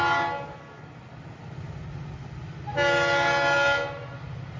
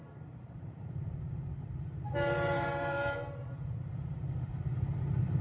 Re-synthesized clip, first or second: second